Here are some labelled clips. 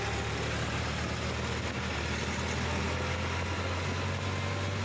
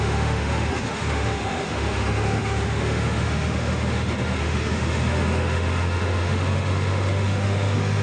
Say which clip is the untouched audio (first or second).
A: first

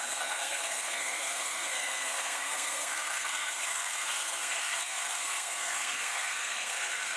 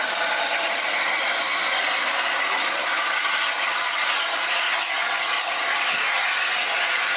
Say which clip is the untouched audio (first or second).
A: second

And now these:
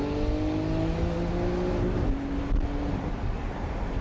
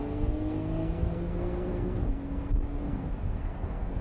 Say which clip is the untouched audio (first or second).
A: first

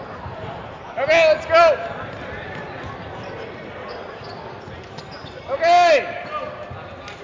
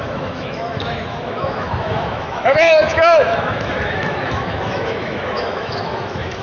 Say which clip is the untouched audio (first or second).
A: first